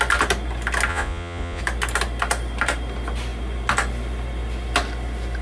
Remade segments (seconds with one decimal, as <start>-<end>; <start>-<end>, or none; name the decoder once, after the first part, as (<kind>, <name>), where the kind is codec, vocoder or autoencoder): 0.9-1.6 (vocoder, Vocos)